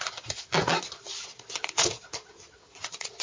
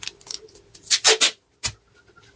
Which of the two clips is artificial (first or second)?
first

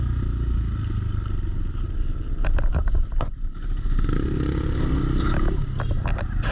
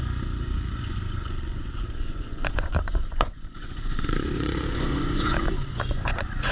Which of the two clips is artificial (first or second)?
second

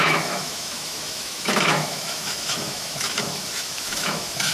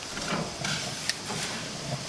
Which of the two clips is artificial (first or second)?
first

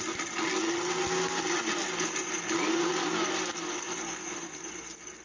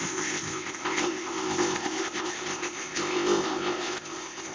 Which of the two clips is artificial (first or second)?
second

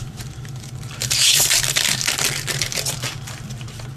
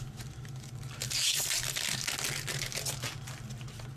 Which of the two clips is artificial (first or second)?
first